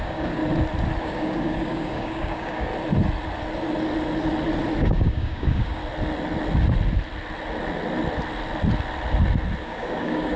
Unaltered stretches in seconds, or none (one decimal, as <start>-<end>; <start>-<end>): 0.4-1.0; 2.7-4.8; 5.8-9.6